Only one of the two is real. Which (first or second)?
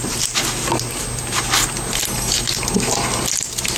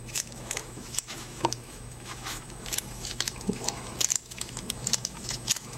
first